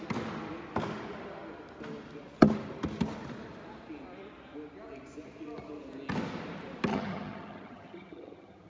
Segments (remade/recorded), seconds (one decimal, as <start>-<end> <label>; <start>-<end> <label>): 0.0-6.9 recorded; 6.9-8.7 remade